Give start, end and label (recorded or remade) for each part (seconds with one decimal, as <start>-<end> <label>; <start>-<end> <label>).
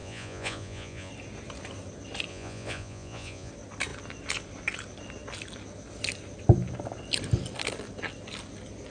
0.0-1.1 remade; 1.1-2.3 recorded; 2.3-3.5 remade; 3.5-8.9 recorded